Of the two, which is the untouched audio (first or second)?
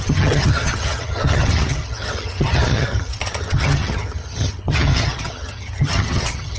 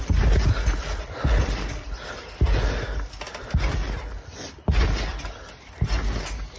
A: second